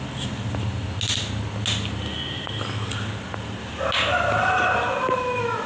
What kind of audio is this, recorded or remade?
recorded